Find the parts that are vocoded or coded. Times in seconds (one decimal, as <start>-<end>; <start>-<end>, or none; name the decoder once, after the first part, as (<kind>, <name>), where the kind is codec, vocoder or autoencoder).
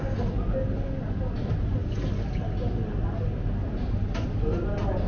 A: none